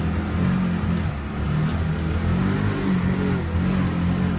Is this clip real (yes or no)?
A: yes